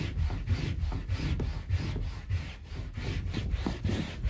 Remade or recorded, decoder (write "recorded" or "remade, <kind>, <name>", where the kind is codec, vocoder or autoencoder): recorded